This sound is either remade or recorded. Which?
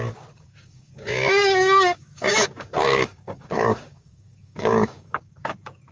remade